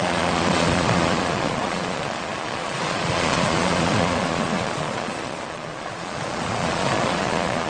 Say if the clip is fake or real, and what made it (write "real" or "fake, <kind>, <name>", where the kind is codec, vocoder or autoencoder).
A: fake, vocoder, Vocos